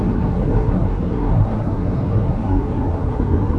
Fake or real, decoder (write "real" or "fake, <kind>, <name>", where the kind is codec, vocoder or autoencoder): fake, codec, SNAC